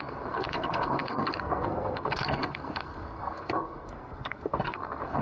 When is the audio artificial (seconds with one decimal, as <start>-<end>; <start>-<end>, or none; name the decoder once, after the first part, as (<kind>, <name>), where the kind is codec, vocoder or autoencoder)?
0.0-5.2 (codec, SNAC)